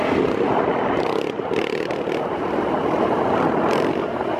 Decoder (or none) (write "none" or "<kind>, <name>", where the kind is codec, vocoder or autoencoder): none